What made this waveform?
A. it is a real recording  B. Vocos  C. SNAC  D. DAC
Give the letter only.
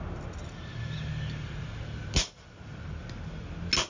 A